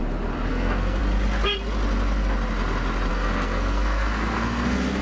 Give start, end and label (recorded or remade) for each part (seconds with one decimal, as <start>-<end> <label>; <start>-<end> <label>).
0.0-0.5 recorded; 0.5-1.0 remade; 1.0-3.1 recorded; 3.1-5.0 remade